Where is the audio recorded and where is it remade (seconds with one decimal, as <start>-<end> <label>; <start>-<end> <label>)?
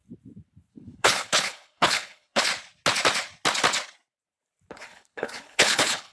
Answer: 0.0-0.7 recorded; 0.7-2.5 remade; 2.5-4.7 recorded; 4.7-6.1 remade